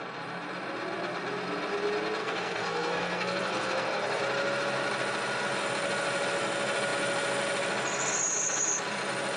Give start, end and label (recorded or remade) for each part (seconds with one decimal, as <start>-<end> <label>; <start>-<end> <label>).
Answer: 0.0-2.2 recorded; 2.2-4.2 remade; 4.2-9.4 recorded